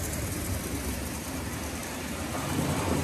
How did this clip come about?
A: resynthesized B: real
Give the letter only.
A